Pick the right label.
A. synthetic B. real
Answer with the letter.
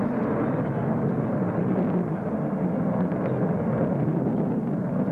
B